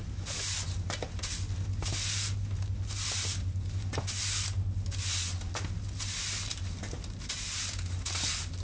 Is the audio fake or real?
real